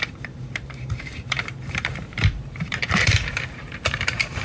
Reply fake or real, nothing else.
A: fake